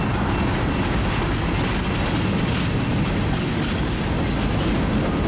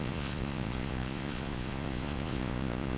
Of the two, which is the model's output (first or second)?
second